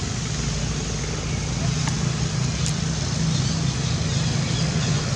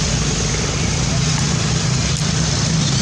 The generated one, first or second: second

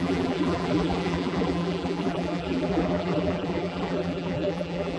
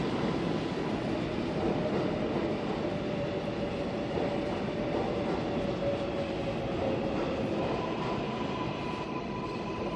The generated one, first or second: first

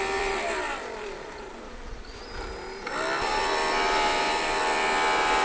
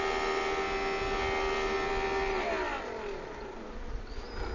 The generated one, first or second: first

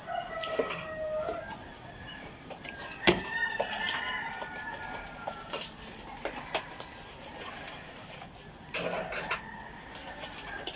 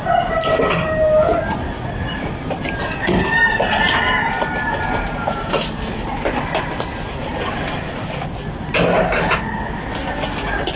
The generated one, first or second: first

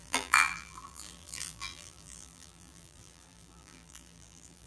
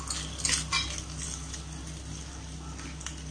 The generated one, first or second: first